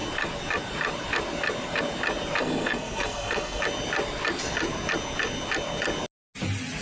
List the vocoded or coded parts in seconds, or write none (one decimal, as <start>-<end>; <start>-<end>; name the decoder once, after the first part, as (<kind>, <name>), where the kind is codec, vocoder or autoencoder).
2.4-3.6 (codec, SNAC)